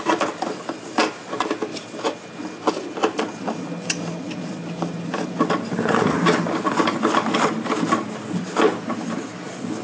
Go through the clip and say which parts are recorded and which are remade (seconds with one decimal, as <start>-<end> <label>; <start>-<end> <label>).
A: 0.0-9.8 recorded